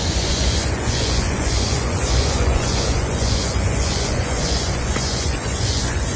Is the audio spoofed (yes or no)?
yes